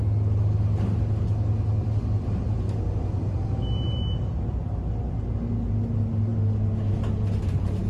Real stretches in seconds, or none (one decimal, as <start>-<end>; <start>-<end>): 0.0-7.9